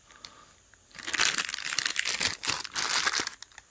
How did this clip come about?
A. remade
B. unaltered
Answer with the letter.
B